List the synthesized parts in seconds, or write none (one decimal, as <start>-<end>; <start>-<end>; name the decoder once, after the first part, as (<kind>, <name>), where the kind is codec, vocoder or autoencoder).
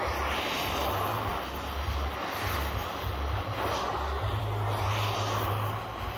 none